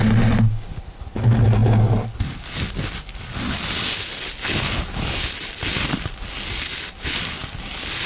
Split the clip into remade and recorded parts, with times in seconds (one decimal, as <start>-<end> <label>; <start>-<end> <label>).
0.0-8.1 recorded